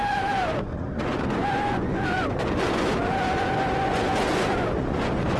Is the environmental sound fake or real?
fake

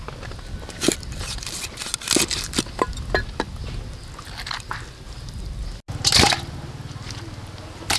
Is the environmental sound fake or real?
real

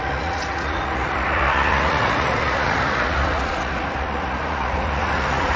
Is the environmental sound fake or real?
fake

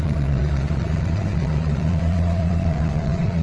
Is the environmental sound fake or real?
fake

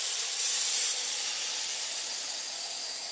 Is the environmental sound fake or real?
real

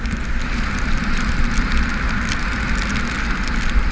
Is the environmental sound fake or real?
real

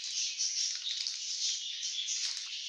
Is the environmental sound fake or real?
real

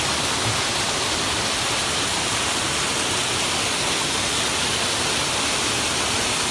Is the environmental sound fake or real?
real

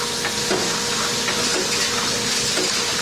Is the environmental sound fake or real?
real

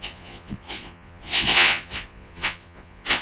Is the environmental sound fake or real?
fake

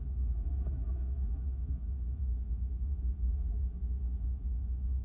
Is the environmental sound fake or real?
fake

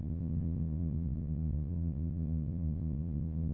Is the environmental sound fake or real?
fake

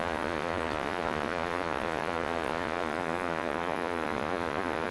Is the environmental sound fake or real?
fake